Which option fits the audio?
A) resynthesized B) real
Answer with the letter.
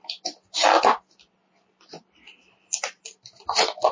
B